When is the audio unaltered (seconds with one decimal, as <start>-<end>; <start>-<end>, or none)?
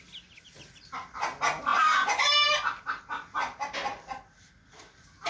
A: 0.0-5.3